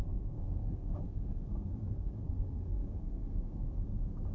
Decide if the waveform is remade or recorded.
remade